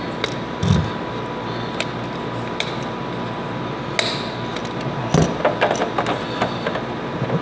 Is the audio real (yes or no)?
yes